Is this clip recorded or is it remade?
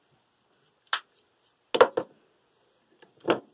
recorded